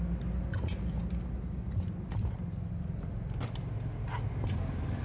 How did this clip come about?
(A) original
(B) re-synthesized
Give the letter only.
A